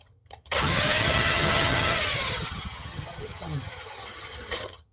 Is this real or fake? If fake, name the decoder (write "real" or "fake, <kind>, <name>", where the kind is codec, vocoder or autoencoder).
fake, vocoder, HiFi-GAN